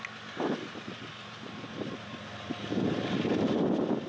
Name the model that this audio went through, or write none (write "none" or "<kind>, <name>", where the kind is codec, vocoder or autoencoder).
none